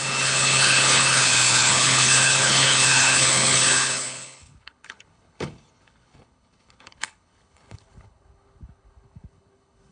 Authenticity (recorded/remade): remade